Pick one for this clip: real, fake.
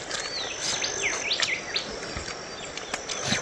real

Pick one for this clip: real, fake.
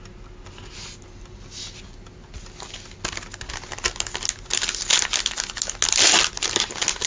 real